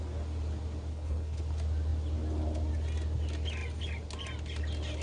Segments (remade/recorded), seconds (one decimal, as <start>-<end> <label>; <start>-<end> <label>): 0.0-0.9 recorded; 0.9-1.4 remade; 1.4-5.0 recorded